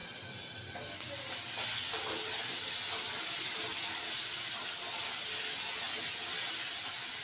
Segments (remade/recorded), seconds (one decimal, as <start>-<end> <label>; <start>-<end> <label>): 0.0-7.2 recorded